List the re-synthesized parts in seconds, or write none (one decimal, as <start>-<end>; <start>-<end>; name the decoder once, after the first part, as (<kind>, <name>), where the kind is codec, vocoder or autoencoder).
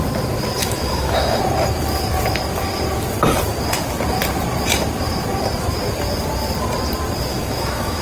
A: 0.6-1.4 (autoencoder, DAC-VAE); 7.3-8.0